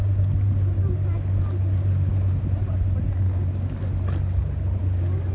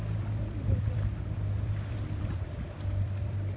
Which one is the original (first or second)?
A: first